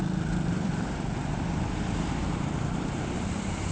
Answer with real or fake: fake